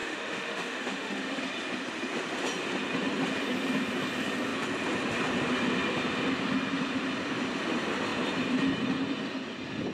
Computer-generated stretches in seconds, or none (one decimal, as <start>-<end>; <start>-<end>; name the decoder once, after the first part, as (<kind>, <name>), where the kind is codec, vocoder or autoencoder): 0.0-1.4 (autoencoder, DAC-VAE)